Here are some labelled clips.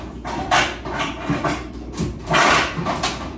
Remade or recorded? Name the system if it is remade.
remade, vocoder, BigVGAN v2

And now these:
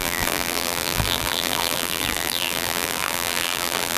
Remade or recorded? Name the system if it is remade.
remade, vocoder, BigVGAN v2